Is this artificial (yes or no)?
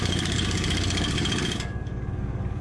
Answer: yes